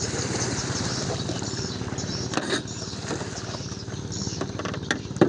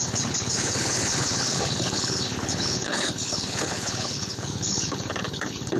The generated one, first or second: second